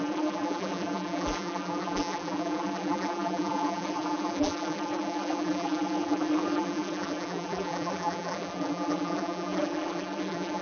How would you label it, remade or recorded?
remade